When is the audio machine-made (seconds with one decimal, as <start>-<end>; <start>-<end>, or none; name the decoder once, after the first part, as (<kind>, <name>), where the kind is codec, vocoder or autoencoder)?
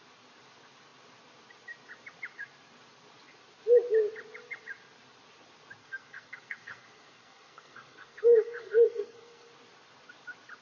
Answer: 5.8-9.5 (codec, SNAC)